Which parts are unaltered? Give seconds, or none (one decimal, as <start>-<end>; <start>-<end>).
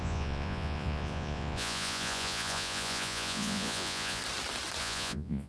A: 4.2-4.8